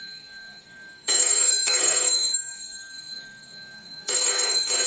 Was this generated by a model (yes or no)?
yes